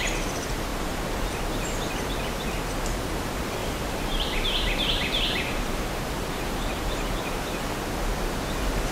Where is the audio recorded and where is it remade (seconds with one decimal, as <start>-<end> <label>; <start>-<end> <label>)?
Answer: 0.0-0.7 recorded; 0.7-1.4 remade; 1.4-3.6 recorded; 3.6-7.1 remade; 7.1-8.9 recorded